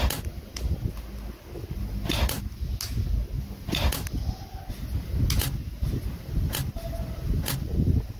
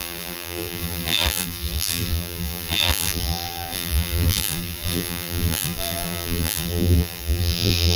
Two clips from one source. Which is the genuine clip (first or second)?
first